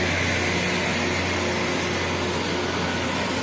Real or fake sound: real